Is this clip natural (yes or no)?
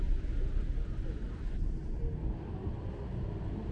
yes